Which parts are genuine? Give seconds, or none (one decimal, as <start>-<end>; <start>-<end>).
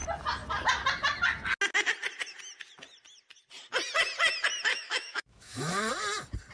0.0-4.7; 5.9-6.5